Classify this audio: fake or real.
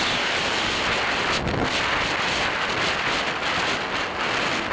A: real